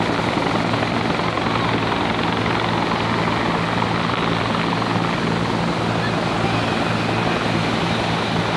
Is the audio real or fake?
real